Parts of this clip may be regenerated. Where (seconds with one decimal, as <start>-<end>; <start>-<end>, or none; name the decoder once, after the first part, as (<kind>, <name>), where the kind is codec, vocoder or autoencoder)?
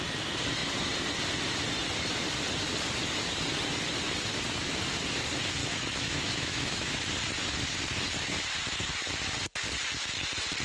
5.6-6.9 (autoencoder, DAC-VAE)